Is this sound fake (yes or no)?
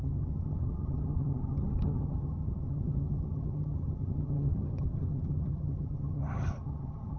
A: yes